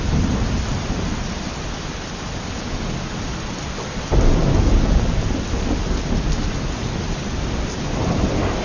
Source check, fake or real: real